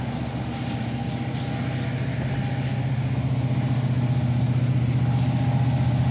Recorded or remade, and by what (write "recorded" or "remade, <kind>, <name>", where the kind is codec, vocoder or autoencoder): recorded